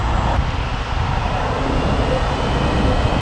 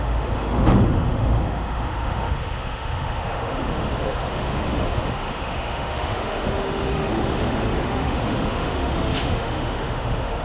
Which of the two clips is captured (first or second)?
first